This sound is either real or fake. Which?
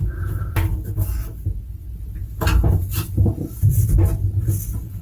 real